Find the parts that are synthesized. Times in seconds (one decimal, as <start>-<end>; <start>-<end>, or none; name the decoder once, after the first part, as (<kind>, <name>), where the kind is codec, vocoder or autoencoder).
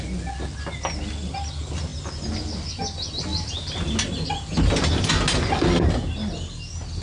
none